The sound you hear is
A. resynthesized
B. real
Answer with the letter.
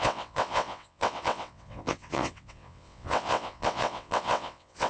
A